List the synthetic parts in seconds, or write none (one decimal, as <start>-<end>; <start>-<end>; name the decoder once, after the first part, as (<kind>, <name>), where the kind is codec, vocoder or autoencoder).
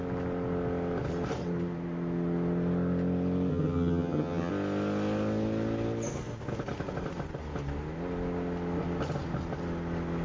3.5-4.5 (vocoder, HiFi-GAN)